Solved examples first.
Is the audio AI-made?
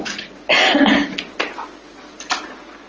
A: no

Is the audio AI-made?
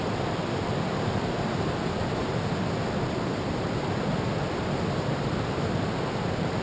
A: yes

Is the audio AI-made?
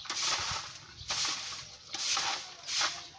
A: no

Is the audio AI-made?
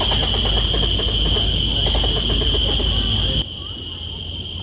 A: no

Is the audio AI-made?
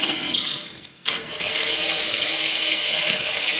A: yes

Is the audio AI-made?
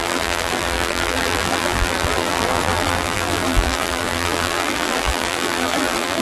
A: yes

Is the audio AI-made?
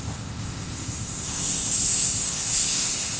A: yes